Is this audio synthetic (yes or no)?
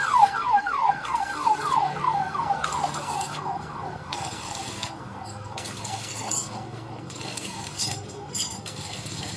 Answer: yes